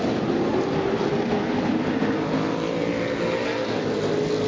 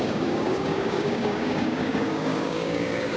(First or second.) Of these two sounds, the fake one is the second